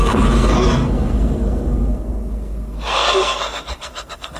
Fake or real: fake